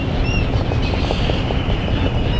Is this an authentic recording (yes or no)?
yes